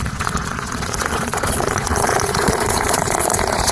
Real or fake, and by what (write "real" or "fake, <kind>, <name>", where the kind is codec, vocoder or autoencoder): fake, vocoder, Vocos